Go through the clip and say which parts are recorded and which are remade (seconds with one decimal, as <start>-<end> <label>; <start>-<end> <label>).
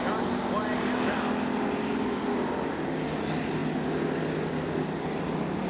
0.0-5.7 recorded